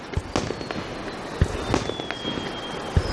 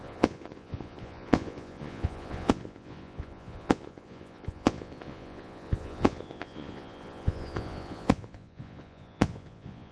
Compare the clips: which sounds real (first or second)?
first